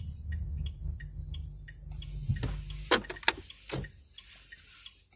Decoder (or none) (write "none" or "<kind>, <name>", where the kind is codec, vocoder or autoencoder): none